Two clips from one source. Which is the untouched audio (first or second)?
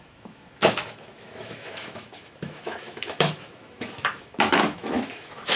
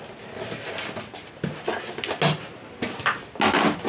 second